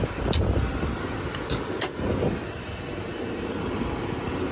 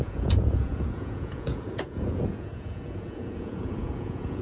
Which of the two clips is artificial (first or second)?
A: second